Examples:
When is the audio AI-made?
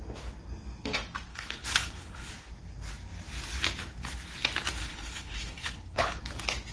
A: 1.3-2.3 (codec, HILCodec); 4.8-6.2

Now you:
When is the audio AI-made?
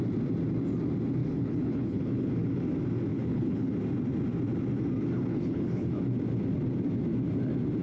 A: 1.2-2.3 (codec, HILCodec); 3.1-3.8; 5.3-5.9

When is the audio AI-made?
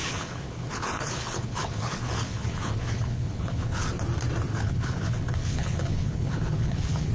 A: 0.0-3.9 (codec, HILCodec); 4.5-7.1